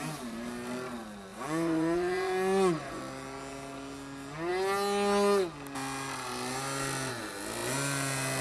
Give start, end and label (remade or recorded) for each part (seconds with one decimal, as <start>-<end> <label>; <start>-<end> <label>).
0.0-1.3 recorded; 1.3-3.0 remade; 3.0-8.4 recorded